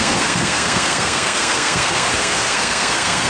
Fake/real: fake